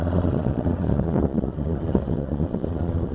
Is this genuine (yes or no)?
no